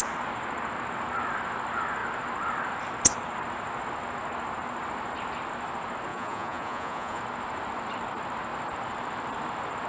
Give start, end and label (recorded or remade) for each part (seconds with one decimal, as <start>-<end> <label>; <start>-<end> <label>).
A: 0.0-6.1 recorded; 6.1-7.2 remade; 7.2-9.9 recorded